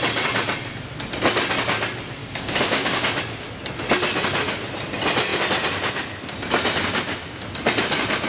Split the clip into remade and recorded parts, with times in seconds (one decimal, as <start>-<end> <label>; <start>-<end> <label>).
0.0-2.2 recorded; 2.2-3.2 remade; 3.2-8.3 recorded